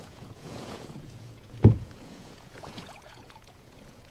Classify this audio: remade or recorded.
remade